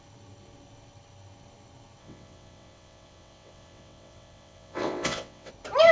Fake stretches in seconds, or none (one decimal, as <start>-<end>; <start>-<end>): 2.0-5.5